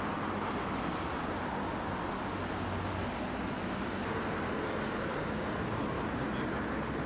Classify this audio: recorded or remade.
recorded